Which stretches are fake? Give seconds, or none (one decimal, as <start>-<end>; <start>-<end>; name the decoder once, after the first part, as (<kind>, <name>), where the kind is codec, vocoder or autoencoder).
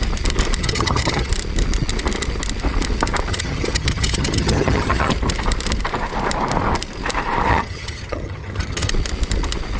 0.6-1.3 (vocoder, HiFi-GAN); 3.3-5.1; 7.5-8.9